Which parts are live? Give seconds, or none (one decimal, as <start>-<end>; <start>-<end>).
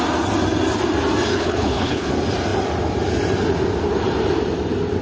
0.0-1.3; 2.1-5.0